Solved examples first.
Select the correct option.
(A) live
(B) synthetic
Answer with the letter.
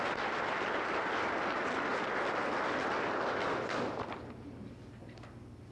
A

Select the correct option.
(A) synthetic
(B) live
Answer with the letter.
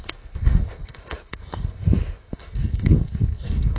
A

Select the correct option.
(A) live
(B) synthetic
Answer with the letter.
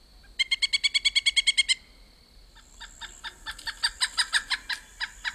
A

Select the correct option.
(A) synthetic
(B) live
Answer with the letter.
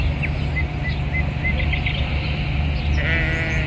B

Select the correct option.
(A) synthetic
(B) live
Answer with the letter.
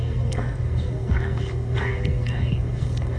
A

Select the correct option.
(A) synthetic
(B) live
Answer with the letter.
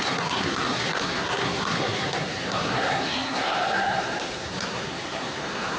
A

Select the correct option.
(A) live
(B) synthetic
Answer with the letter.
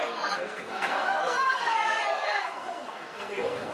B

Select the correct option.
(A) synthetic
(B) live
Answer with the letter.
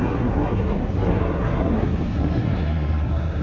A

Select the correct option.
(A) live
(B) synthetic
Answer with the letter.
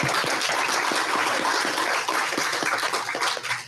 A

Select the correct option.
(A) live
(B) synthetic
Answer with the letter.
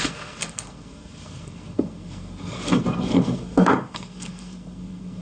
B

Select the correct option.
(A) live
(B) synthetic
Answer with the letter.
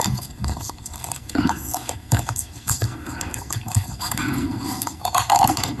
B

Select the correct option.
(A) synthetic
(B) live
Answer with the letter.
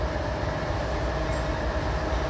B